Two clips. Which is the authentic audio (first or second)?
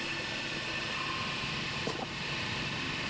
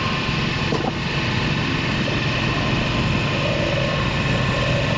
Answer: second